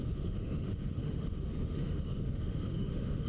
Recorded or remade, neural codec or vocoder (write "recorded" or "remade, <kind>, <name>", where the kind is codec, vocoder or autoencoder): remade, autoencoder, DAC-VAE